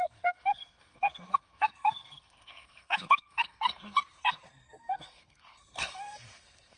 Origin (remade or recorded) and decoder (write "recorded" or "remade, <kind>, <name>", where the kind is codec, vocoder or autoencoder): remade, codec, SNAC